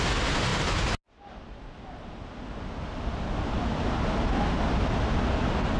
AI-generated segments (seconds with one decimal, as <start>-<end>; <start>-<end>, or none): none